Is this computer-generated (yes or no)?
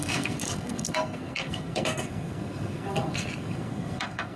yes